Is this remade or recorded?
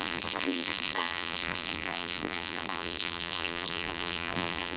remade